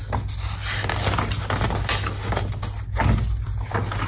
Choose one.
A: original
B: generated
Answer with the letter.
A